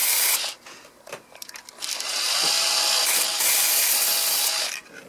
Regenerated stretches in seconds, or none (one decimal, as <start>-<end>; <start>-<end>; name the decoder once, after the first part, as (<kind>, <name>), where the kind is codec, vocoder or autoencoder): none